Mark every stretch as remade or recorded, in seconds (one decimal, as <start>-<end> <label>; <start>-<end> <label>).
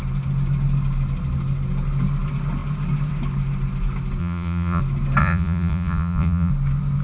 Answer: 0.0-4.2 recorded; 4.2-4.8 remade; 4.8-5.2 recorded; 5.2-6.5 remade; 6.5-7.0 recorded